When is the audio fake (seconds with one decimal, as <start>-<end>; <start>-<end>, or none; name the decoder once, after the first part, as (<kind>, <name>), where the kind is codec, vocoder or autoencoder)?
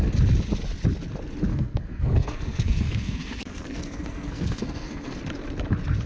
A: 1.5-5.2 (codec, SNAC)